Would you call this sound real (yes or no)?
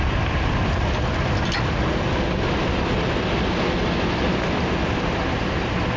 yes